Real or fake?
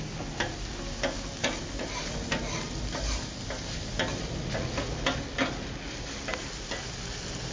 real